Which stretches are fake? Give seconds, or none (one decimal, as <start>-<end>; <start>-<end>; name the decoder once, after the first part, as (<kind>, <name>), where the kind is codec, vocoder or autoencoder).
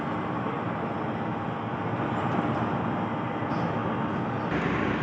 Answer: none